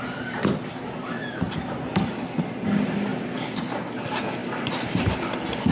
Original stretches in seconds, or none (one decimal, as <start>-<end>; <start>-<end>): 0.0-5.7